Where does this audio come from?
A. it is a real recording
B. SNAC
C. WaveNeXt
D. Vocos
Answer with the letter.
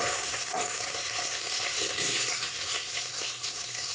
B